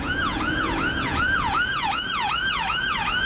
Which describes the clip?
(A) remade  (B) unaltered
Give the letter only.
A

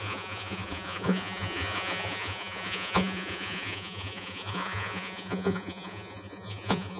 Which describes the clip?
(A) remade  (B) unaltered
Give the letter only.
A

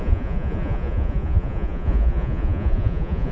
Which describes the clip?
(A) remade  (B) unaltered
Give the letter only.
A